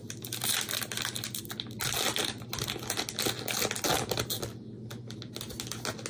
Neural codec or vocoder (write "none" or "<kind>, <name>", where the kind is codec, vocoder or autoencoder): none